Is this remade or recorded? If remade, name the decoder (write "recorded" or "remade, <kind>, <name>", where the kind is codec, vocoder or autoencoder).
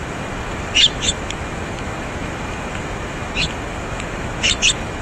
remade, autoencoder, DAC-VAE